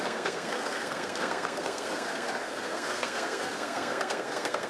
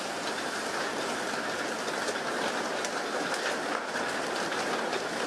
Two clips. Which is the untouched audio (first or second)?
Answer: second